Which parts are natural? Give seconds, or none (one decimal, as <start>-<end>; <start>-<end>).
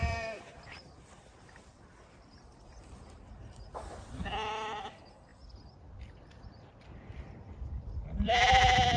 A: 4.2-5.3; 8.3-9.0